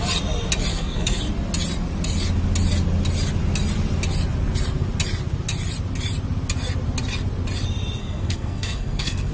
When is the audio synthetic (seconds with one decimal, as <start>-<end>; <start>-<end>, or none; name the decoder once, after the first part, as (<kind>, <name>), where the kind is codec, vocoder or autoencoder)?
0.7-1.2 (codec, SNAC); 8.0-9.3